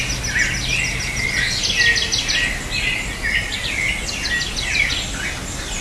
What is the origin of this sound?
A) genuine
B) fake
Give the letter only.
A